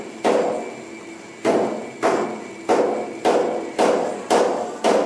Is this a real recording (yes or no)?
yes